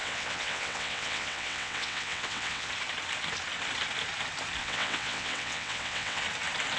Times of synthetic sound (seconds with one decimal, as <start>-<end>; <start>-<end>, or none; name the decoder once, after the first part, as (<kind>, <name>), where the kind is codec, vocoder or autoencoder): 0.0-2.7 (vocoder, WaveNeXt); 4.6-6.2